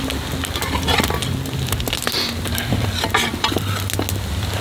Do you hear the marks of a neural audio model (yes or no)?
no